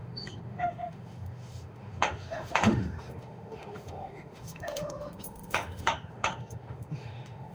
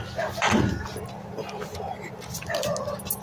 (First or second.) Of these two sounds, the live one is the second